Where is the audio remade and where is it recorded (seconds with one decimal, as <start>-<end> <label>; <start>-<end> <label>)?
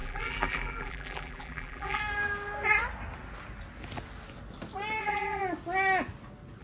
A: 0.0-2.0 remade; 2.0-5.0 recorded; 5.0-5.4 remade; 5.4-6.6 recorded